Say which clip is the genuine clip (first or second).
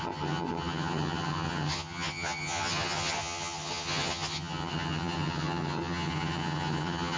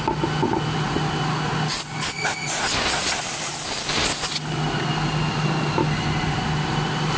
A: second